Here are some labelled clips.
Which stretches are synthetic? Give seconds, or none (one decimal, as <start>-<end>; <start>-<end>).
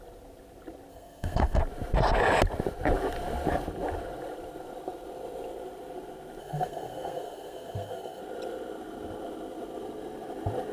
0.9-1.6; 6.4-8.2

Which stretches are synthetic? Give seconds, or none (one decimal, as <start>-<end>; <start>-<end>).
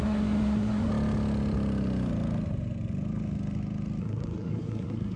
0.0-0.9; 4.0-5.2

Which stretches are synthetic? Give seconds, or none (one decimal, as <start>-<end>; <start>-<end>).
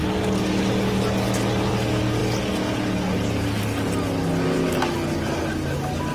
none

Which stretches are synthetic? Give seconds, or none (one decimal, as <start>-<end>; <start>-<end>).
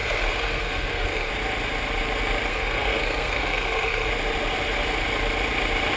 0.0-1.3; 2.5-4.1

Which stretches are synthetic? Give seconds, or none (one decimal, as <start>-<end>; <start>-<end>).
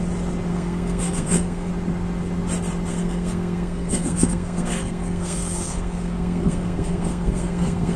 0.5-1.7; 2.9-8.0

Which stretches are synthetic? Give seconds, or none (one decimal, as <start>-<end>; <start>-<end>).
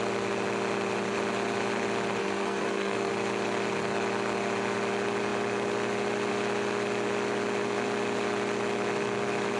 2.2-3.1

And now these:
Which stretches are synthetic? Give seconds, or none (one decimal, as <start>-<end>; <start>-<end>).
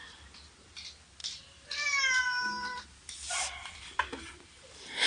none